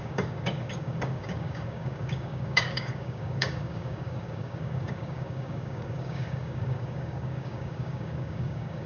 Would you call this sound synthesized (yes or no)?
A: yes